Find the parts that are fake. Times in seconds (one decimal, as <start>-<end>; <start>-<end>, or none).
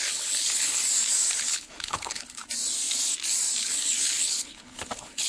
0.0-0.8; 1.4-2.4; 3.6-5.3